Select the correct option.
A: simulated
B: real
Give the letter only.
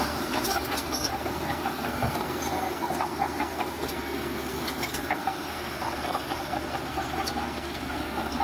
A